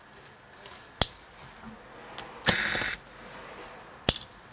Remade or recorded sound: recorded